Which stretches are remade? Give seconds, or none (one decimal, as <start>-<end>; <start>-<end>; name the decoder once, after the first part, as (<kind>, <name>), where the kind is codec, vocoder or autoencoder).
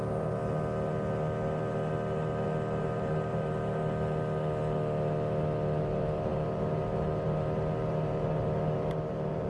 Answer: 0.0-0.4 (vocoder, BigVGAN v2); 2.8-3.8; 5.8-9.5